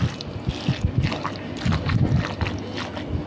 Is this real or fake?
real